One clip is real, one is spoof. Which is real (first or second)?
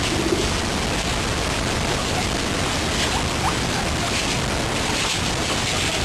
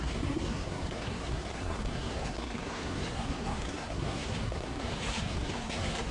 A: first